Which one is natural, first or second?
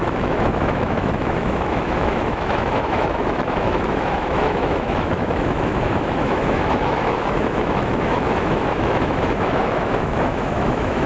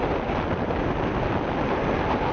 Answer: second